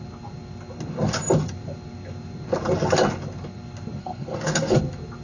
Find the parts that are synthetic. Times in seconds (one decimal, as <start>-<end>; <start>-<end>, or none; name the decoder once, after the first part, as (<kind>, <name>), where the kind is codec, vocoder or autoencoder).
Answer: 4.0-4.8 (codec, SNAC)